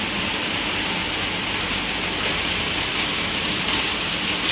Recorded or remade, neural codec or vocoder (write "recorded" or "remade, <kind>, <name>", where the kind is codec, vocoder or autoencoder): recorded